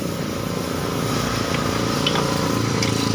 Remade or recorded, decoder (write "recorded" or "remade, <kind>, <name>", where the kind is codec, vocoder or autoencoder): recorded